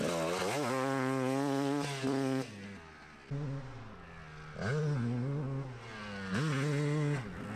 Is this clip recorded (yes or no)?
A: yes